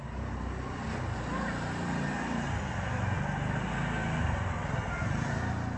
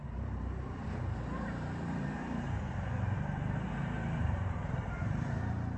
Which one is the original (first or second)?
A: first